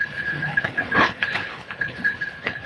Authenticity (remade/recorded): remade